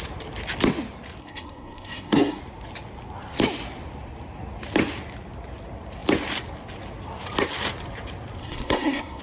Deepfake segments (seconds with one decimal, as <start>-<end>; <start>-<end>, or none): 1.2-2.4; 8.4-9.2

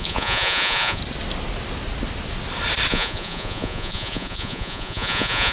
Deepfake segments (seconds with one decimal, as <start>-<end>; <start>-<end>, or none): 0.0-1.0; 2.9-5.5

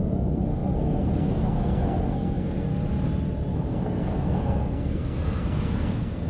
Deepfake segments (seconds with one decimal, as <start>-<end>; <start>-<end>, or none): 0.0-2.7; 3.5-6.3

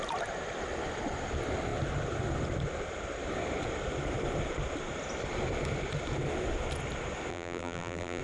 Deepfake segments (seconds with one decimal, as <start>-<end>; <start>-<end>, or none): 7.3-8.2

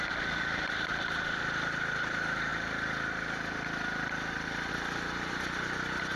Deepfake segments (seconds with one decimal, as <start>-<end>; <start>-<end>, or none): none

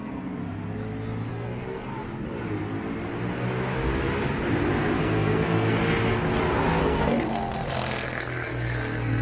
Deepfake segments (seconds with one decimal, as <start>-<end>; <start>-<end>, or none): 0.0-0.4; 1.3-1.9; 5.0-5.8; 6.8-9.2

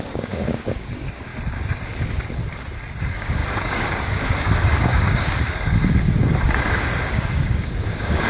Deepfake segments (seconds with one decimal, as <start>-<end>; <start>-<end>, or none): 0.0-1.3; 3.0-8.3

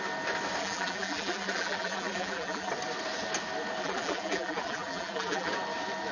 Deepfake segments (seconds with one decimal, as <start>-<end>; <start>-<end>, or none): 0.6-2.7; 3.8-5.5